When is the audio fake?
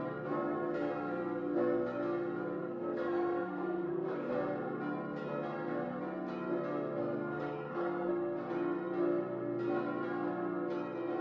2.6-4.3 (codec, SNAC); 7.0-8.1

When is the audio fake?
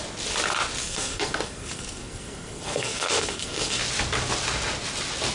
0.8-3.8 (codec, SNAC)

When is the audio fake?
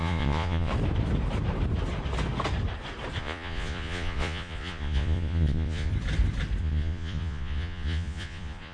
0.0-0.7 (vocoder, Vocos); 3.2-5.9; 6.6-8.7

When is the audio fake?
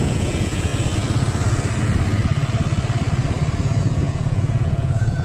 0.0-0.7 (vocoder, Vocos); 3.8-5.2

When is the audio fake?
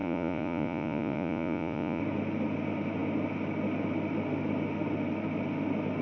0.0-2.0 (vocoder, Vocos)